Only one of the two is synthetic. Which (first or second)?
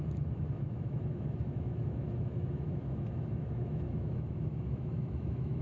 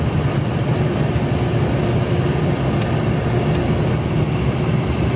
first